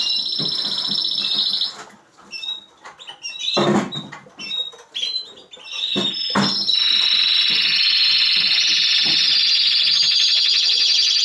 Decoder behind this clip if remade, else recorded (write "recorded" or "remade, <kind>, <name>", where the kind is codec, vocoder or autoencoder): recorded